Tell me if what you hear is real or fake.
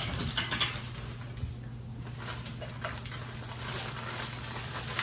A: real